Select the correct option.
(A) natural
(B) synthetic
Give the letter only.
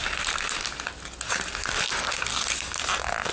A